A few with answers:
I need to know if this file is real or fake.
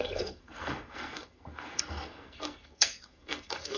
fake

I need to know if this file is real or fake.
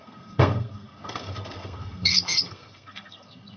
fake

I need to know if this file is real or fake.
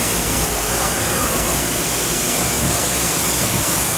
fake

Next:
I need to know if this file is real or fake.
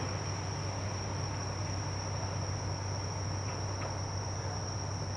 real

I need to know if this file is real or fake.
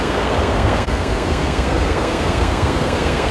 fake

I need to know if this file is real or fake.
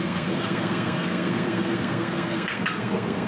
fake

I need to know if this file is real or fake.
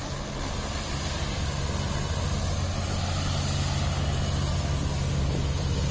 real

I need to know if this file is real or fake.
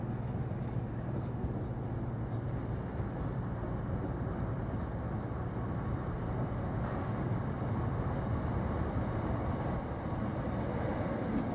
real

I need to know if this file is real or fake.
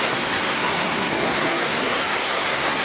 fake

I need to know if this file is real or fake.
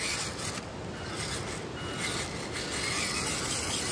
real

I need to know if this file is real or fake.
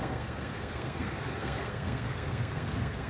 fake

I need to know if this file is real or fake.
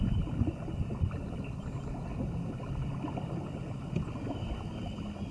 real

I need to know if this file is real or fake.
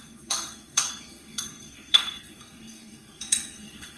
fake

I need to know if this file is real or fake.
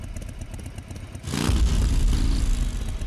real